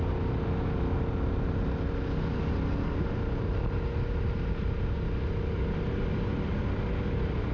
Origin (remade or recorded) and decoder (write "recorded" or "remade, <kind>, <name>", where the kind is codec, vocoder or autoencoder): recorded